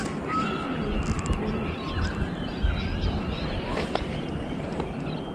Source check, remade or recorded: recorded